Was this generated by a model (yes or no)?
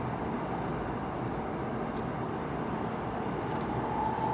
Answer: yes